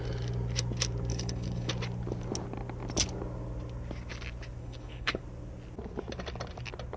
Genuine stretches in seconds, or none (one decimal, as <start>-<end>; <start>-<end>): 0.0-1.1; 1.7-4.6; 5.2-7.0